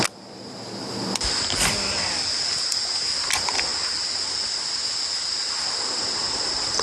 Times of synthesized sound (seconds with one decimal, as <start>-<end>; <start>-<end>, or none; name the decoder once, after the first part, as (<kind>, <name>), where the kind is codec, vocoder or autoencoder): none